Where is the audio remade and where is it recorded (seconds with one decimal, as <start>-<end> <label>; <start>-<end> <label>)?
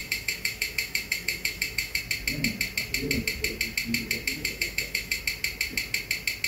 0.0-2.0 remade; 2.0-4.3 recorded; 4.3-5.2 remade; 5.2-6.5 recorded